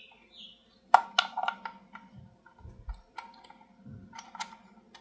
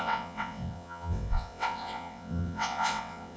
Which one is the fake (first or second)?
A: second